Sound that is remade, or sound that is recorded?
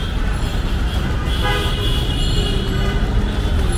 recorded